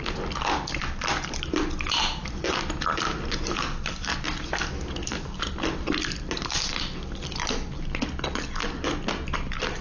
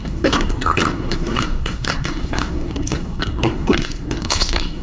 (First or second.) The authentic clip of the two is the first